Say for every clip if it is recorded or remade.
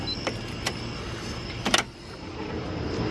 recorded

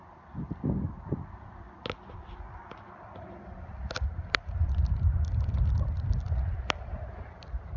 remade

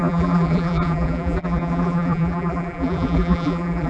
remade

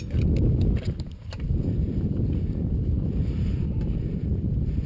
remade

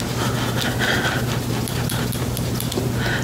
recorded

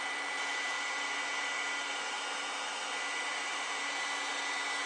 recorded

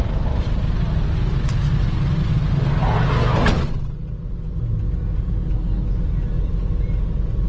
recorded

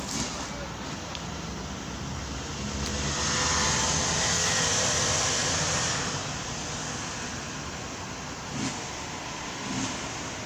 recorded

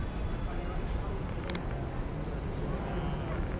recorded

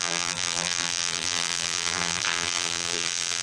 remade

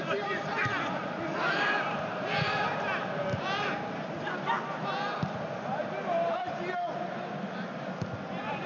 recorded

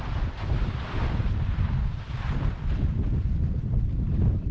remade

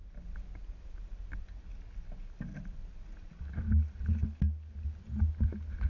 recorded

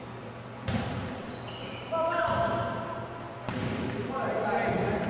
remade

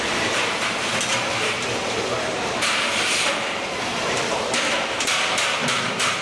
remade